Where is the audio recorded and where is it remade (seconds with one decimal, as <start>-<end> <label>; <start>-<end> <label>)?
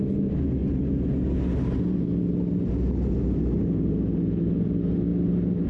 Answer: 0.0-5.7 recorded